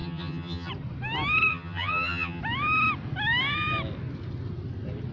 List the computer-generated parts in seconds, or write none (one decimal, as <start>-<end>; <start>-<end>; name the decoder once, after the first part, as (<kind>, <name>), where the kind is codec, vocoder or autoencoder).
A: 0.0-0.7 (vocoder, HiFi-GAN); 1.5-2.4